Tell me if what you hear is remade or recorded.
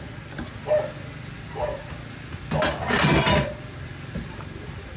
recorded